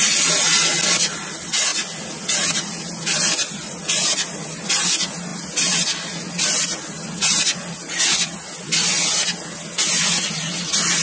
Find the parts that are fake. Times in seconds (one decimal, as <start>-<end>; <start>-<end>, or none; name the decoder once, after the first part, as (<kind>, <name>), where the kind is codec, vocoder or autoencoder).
none